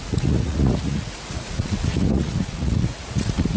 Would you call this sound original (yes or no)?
no